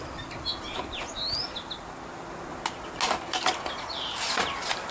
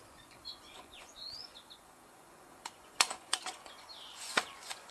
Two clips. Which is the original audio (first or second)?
first